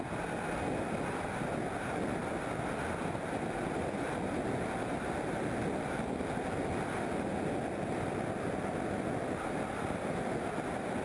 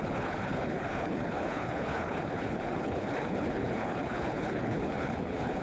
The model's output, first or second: second